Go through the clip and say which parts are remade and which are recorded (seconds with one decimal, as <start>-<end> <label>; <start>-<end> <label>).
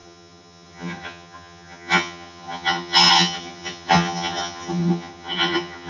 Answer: 0.0-5.9 remade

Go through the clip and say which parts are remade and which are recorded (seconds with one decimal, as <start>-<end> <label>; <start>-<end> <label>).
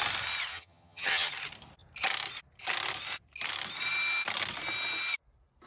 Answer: 0.0-0.5 recorded; 0.5-1.3 remade; 1.3-5.7 recorded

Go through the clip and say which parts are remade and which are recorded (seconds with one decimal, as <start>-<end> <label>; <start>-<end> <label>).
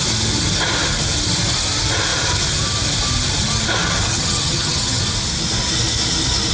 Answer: 0.0-4.1 recorded; 4.1-5.0 remade; 5.0-6.5 recorded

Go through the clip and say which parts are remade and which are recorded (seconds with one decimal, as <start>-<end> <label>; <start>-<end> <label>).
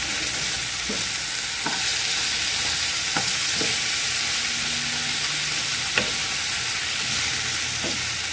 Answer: 0.0-8.3 recorded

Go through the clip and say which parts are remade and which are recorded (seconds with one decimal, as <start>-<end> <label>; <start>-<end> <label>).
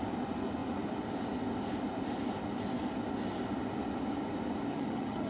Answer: 0.0-4.7 recorded; 4.7-5.3 remade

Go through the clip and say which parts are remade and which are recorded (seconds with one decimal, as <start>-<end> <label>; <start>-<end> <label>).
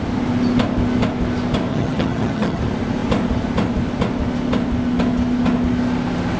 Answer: 0.0-1.7 recorded; 1.7-2.6 remade; 2.6-6.4 recorded